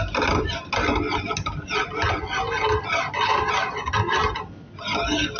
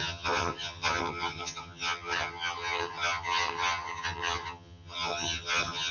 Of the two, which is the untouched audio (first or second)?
first